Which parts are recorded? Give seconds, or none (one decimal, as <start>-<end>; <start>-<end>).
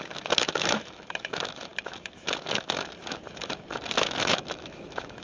none